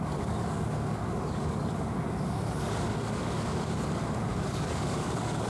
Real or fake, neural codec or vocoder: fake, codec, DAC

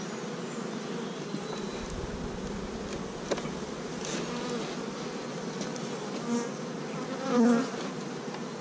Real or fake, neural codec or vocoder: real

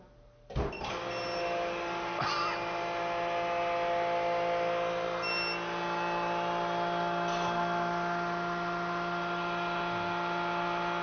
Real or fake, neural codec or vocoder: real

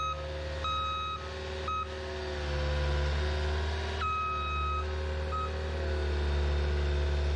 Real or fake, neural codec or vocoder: real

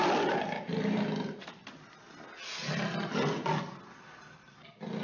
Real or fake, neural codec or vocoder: real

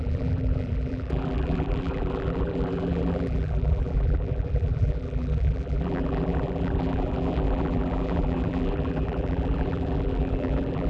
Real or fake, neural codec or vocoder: fake, vocoder, BigVGAN v2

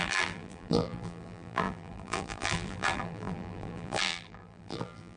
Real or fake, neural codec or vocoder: fake, vocoder, BigVGAN v2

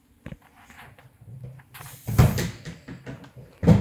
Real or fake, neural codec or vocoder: real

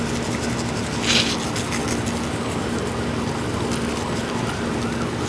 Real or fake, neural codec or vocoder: real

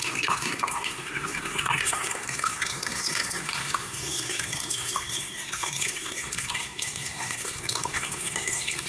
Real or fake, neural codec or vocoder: fake, codec, SNAC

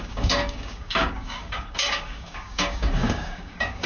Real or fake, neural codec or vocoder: fake, codec, DAC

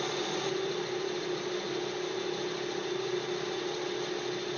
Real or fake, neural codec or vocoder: real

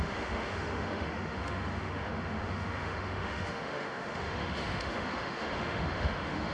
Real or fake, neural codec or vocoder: fake, autoencoder, DAC-VAE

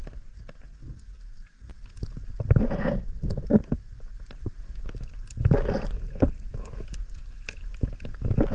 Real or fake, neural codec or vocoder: real